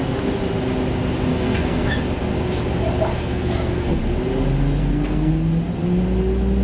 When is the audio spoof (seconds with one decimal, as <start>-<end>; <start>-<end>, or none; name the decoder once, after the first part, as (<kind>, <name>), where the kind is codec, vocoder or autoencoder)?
1.3-2.0 (codec, SNAC); 3.2-4.0; 4.8-5.3